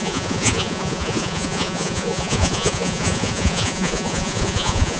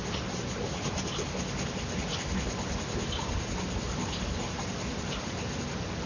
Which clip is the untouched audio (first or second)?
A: second